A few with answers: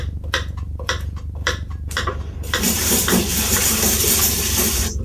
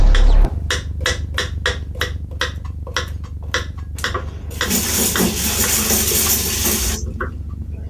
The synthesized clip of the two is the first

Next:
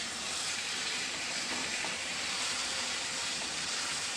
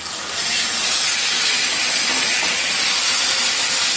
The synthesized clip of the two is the first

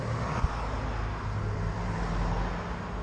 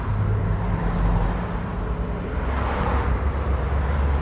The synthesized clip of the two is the second